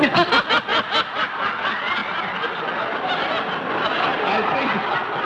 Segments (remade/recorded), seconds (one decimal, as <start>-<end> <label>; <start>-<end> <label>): 0.0-0.7 recorded; 0.7-1.5 remade; 1.5-2.0 recorded; 2.0-2.7 remade; 2.7-4.1 recorded; 4.1-4.6 remade; 4.6-5.3 recorded